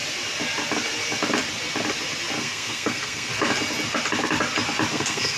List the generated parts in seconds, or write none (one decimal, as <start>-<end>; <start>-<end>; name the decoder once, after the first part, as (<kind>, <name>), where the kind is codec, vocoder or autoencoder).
2.4-3.3 (codec, SNAC); 4.9-5.4